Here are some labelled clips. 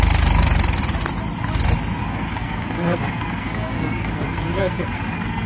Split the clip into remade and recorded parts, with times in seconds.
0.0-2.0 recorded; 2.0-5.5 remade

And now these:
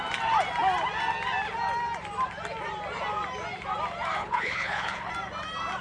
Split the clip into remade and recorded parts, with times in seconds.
0.0-4.2 recorded; 4.2-5.1 remade; 5.1-5.8 recorded

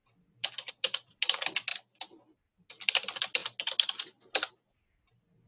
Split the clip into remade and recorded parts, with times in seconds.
0.0-5.5 recorded

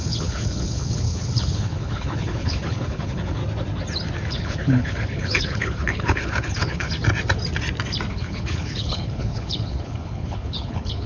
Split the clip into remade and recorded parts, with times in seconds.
0.0-3.4 remade; 3.4-4.3 recorded; 4.3-6.9 remade; 6.9-8.1 recorded; 8.1-11.1 remade

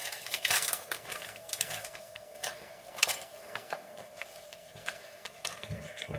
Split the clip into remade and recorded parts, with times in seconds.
0.0-6.2 remade